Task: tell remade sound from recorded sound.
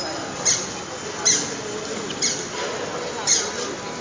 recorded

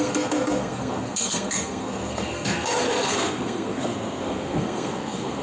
remade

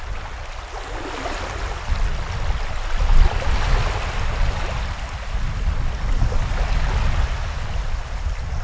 recorded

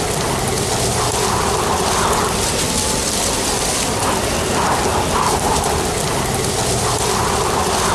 recorded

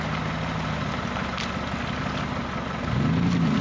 recorded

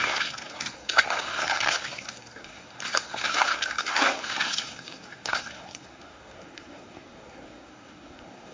remade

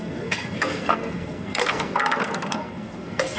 remade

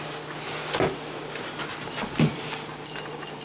recorded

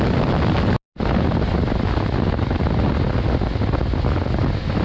recorded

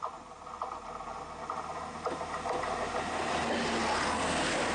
recorded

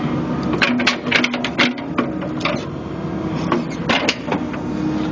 recorded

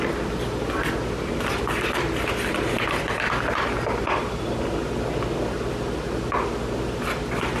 recorded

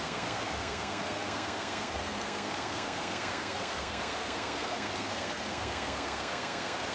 remade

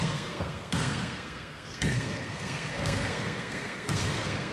remade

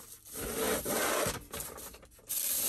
recorded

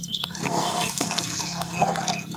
remade